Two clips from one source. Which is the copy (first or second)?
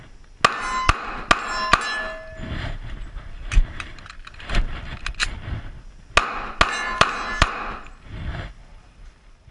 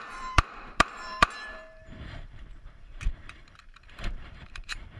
second